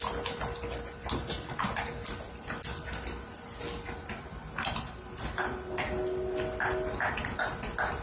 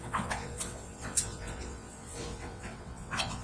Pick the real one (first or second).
first